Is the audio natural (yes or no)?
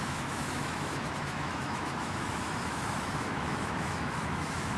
no